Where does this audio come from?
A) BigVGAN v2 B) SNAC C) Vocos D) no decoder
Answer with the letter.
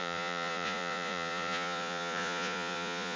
C